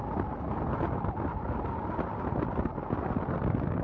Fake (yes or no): no